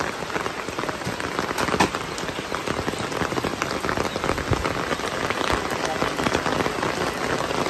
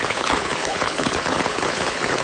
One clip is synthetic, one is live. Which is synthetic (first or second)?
second